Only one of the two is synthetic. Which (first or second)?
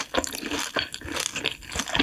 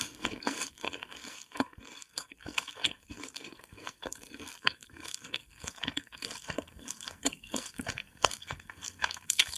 second